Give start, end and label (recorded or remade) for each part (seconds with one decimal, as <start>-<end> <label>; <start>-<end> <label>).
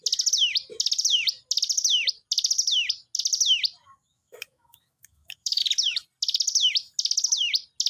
0.0-3.8 recorded; 3.8-5.6 remade; 5.6-7.9 recorded